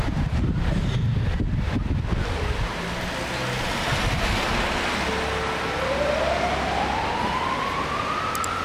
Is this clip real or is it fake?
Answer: real